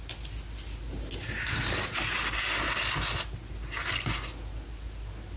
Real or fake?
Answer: real